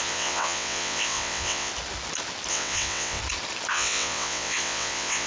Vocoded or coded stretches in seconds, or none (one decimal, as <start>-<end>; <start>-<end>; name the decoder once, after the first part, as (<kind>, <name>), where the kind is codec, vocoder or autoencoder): 0.0-1.7 (vocoder, WaveNeXt); 2.5-3.2; 3.7-5.3